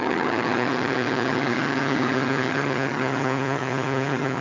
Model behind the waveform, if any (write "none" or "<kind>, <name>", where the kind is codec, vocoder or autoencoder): vocoder, HiFi-GAN